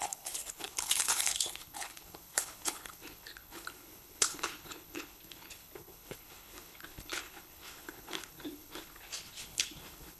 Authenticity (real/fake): fake